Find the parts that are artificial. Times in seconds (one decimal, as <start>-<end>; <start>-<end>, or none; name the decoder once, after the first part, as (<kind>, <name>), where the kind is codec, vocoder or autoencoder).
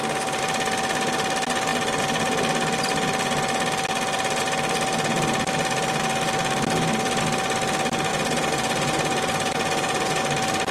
8.1-10.2 (vocoder, Vocos)